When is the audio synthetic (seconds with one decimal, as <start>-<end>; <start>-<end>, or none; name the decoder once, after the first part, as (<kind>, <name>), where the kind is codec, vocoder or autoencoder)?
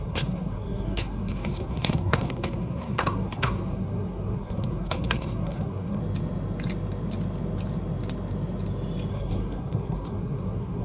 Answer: 0.0-6.0 (codec, SNAC); 9.1-10.8